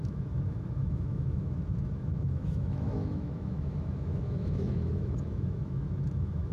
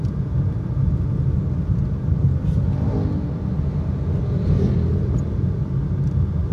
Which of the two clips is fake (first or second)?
first